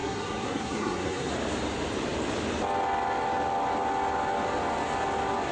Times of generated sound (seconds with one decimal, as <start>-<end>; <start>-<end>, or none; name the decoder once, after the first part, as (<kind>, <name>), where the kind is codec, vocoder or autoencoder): 0.0-1.3 (codec, SNAC)